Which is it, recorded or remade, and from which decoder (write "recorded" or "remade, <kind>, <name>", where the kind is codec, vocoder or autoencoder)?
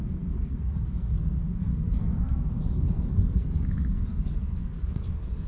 remade, codec, SNAC